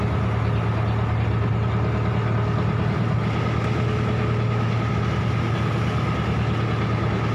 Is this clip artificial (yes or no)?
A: no